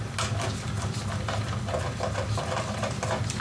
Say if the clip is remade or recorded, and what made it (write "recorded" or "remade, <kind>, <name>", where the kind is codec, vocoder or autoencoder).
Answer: recorded